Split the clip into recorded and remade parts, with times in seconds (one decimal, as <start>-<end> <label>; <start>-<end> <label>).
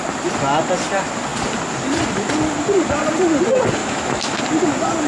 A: 0.0-3.8 recorded; 3.8-4.4 remade; 4.4-5.1 recorded